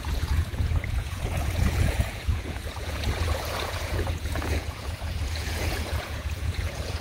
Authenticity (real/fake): fake